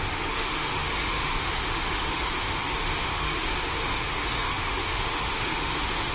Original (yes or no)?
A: no